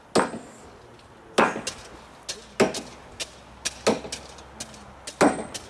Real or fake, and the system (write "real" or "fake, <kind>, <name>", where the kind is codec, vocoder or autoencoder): real